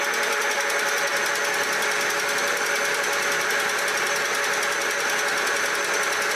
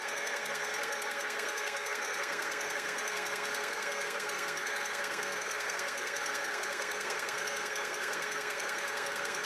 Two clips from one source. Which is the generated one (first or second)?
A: second